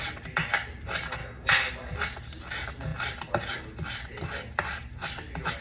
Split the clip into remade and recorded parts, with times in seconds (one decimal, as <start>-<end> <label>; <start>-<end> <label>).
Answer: 0.0-1.2 recorded; 1.2-1.7 remade; 1.7-5.6 recorded